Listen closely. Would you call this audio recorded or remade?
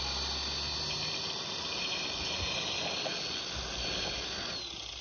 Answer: recorded